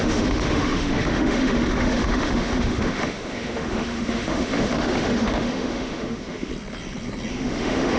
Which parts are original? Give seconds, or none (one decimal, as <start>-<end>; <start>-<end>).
6.5-7.3